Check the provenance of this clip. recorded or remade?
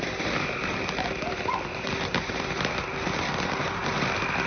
recorded